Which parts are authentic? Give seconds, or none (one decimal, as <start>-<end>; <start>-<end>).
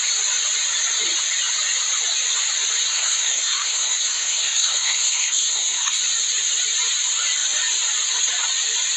0.0-2.9; 6.0-9.0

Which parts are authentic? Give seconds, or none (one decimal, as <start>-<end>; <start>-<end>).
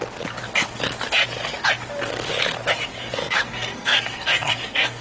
0.0-2.9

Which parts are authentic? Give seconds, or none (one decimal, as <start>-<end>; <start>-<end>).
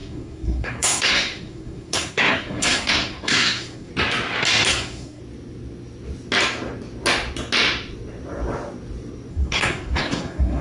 3.9-4.7; 5.2-9.3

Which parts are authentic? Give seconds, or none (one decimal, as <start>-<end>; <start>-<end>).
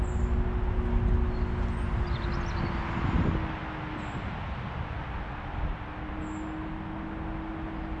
0.0-8.0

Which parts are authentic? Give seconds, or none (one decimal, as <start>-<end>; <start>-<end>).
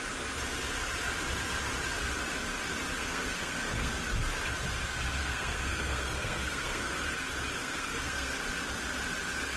0.0-3.0; 3.9-5.2; 6.9-7.6; 8.4-9.6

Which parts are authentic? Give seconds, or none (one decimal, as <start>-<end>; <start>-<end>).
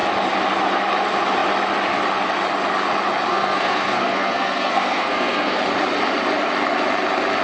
0.0-3.3; 5.6-7.4